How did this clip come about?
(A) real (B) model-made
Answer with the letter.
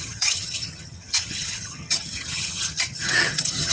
B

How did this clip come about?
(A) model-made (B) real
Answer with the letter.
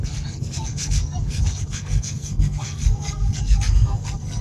A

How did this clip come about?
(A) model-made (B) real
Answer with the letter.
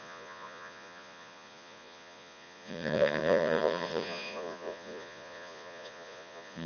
A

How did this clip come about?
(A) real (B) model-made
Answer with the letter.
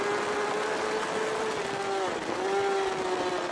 A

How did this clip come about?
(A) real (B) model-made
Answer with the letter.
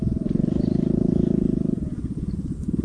A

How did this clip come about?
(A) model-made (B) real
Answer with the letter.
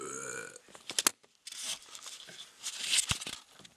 B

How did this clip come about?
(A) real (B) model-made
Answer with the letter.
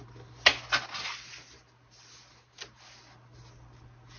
A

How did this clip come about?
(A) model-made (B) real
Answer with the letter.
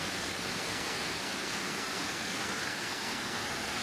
A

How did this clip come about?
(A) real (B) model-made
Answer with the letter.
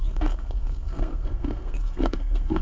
B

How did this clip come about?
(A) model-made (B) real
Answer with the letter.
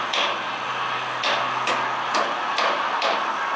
B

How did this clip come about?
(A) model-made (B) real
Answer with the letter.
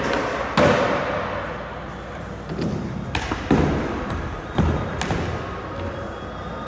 B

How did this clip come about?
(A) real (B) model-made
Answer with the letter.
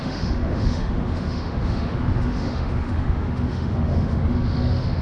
B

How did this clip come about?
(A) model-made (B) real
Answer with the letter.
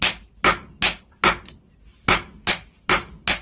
B